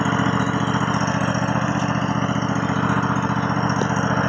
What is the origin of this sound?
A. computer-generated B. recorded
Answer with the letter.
B